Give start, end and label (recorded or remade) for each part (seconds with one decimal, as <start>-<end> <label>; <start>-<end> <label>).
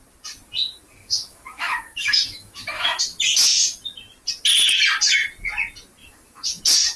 0.0-1.0 recorded; 1.0-3.0 remade; 3.0-6.0 recorded; 6.0-6.6 remade; 6.6-7.0 recorded